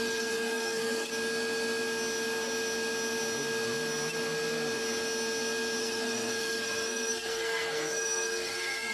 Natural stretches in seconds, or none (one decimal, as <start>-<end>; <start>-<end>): 1.1-5.8